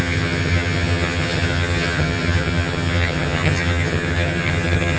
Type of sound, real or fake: fake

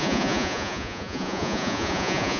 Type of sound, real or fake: fake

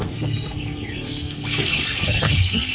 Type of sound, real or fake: fake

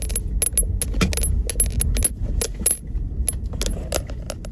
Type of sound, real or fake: real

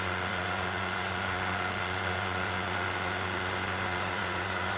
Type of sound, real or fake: fake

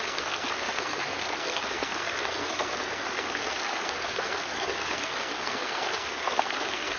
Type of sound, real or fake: fake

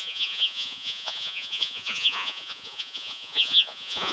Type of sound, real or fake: fake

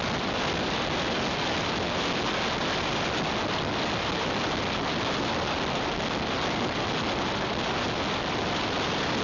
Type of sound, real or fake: real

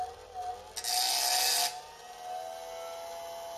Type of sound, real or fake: real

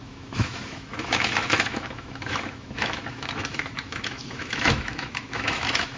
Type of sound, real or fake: fake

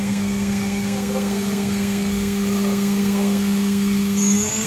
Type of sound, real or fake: fake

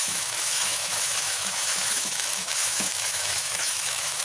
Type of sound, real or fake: fake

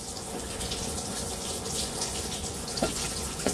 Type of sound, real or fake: fake